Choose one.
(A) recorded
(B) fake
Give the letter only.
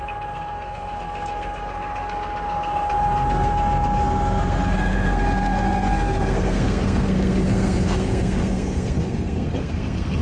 B